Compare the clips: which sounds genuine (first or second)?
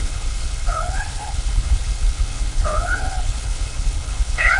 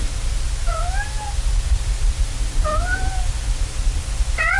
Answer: second